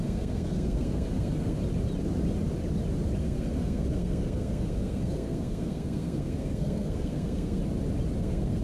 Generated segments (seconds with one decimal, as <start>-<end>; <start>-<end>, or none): 0.0-1.6; 3.2-7.6; 8.2-8.6